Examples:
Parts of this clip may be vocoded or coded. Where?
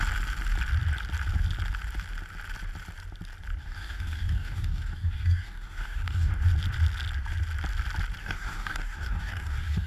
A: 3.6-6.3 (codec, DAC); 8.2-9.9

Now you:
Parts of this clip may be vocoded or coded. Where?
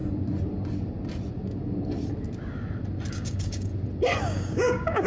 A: 3.1-3.7 (codec, DAC); 4.2-5.1